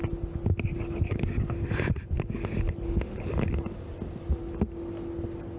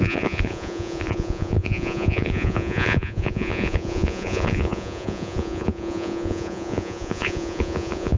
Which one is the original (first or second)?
first